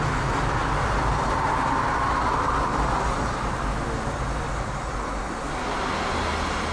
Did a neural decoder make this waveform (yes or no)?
no